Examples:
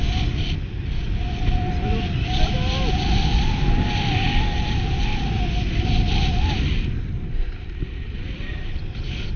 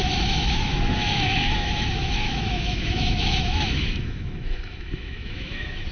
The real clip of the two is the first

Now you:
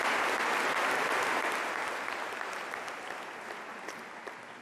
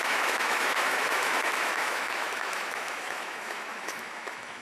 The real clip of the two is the first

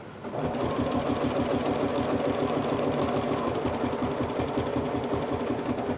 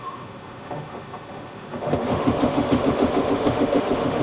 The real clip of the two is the first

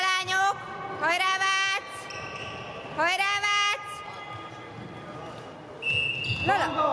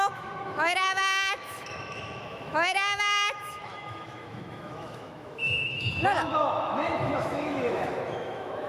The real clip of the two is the first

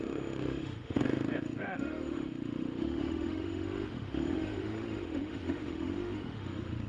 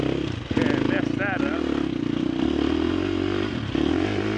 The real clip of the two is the second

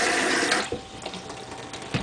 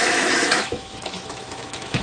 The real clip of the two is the first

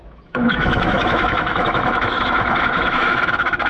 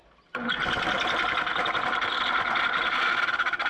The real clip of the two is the second